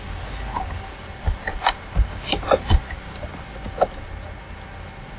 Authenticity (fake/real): real